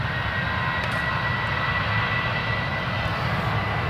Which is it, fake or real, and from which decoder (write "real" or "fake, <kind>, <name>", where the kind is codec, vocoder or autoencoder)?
real